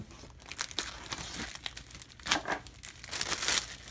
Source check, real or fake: real